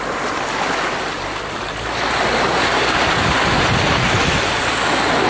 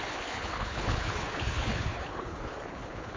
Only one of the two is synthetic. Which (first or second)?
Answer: second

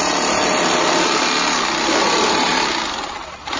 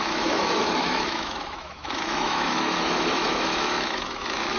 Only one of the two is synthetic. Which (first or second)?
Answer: second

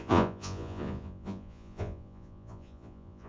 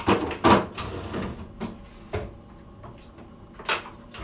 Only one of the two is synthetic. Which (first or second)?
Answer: first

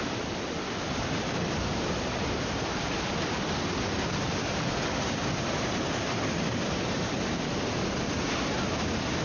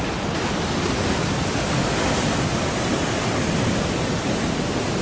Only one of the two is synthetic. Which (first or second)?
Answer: first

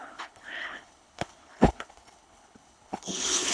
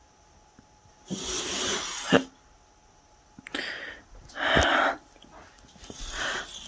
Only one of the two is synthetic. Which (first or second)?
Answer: first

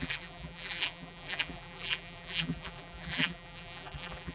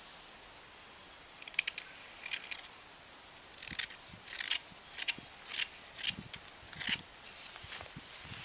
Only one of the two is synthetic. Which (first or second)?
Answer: first